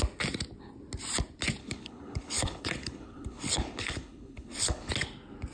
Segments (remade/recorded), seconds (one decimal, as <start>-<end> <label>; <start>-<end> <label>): 0.0-1.6 recorded; 1.6-4.9 remade; 4.9-5.5 recorded